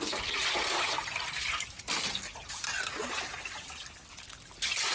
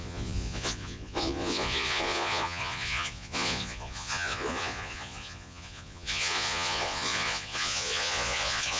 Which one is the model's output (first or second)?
second